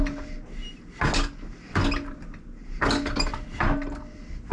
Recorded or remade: recorded